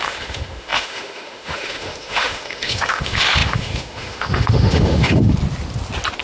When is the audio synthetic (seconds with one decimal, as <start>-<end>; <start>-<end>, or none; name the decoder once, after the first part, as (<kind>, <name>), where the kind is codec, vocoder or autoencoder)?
0.0-5.3 (autoencoder, DAC-VAE)